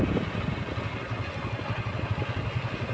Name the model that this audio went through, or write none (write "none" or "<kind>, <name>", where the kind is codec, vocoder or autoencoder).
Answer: none